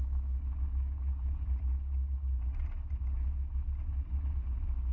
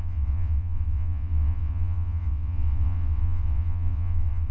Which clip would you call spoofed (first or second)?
second